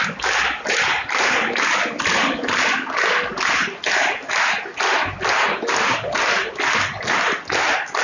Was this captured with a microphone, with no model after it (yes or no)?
yes